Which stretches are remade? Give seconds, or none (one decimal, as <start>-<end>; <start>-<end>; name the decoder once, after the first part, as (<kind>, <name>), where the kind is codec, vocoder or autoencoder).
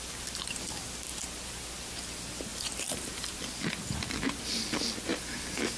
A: 2.5-3.4 (vocoder, BigVGAN v2)